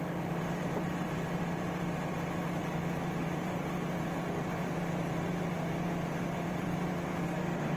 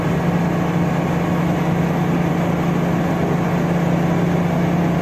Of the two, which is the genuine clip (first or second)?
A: second